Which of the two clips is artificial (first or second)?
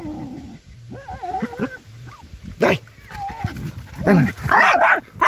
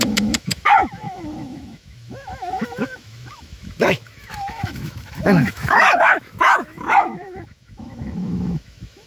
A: second